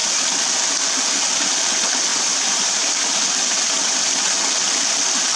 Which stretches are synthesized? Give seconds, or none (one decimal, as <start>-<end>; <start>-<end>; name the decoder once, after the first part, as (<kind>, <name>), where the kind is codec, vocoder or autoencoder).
2.1-2.9 (vocoder, BigVGAN v2)

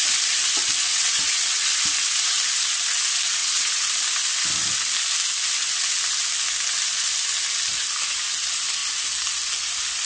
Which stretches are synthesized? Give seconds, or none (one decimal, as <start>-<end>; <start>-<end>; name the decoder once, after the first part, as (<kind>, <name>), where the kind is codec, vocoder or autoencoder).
0.8-1.7 (vocoder, WaveNeXt); 3.4-3.9